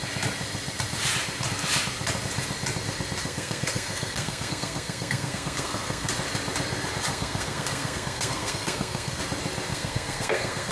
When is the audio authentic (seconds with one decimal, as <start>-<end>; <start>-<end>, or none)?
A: 0.0-3.2; 6.1-7.1; 9.2-9.7